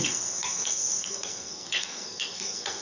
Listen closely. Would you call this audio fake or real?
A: fake